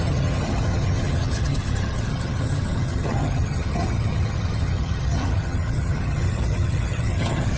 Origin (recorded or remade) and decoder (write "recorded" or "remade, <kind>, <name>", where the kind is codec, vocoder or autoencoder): remade, vocoder, HiFi-GAN